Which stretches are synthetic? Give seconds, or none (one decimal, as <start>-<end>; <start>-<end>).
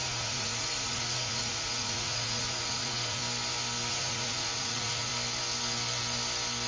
0.0-3.2; 3.9-5.1